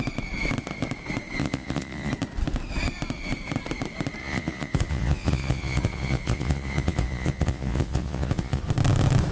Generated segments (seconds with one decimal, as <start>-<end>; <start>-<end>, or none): 1.4-2.1; 4.2-8.6

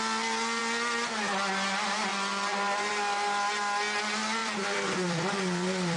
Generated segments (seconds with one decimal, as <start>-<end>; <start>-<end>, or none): 2.1-2.9; 4.4-6.0

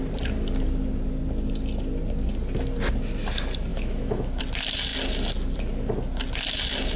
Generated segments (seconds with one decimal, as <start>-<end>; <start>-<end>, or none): 3.7-4.4

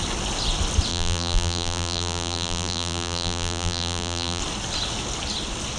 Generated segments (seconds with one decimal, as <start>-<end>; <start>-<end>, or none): 0.9-4.4